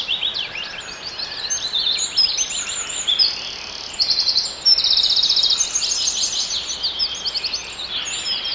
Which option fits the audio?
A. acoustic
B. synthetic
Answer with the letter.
A